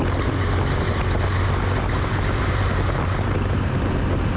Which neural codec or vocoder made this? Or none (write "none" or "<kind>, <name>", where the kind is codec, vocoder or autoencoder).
none